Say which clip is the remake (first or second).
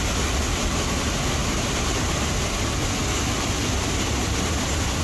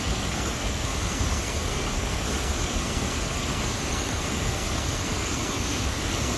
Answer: second